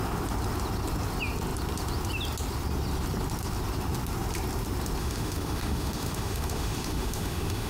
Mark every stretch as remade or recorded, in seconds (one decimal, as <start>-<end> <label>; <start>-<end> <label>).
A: 0.0-5.0 recorded; 5.0-7.7 remade